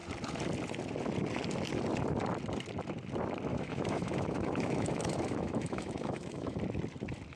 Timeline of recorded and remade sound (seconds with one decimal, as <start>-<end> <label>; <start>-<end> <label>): 0.0-3.5 recorded; 3.5-6.6 remade; 6.6-7.4 recorded